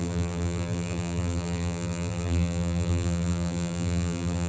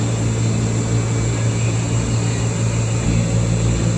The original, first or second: second